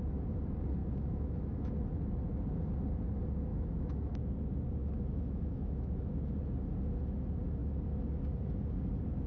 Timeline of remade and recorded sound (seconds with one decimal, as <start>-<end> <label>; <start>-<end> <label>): 0.0-0.8 recorded; 0.8-1.7 remade; 1.7-3.5 recorded; 3.5-4.1 remade; 4.1-4.8 recorded; 4.8-5.9 remade; 5.9-9.3 recorded